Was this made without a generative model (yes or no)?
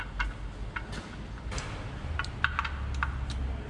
yes